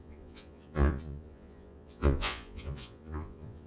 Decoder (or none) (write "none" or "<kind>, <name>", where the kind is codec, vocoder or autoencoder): vocoder, Vocos